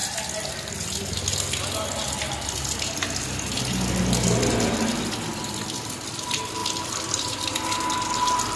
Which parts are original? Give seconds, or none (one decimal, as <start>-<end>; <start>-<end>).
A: 0.0-8.6